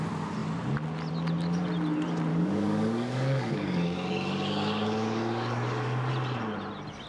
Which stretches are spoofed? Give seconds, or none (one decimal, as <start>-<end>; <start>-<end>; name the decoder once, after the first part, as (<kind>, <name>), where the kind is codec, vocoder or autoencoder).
2.3-6.1 (codec, DAC)